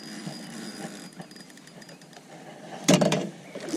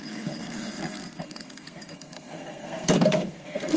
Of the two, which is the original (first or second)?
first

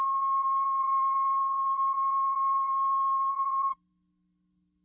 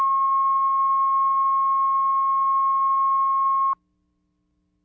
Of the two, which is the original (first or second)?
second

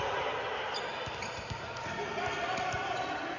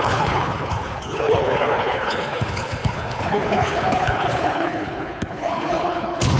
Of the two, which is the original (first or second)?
first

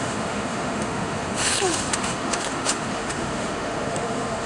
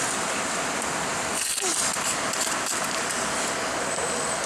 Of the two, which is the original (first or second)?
second